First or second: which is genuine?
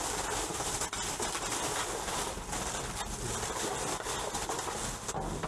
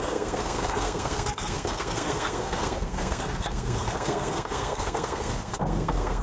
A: first